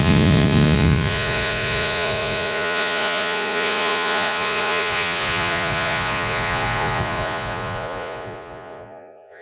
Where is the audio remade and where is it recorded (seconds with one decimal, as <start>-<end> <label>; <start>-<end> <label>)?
0.0-9.4 remade